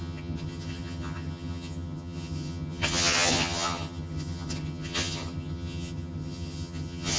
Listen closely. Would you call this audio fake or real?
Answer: fake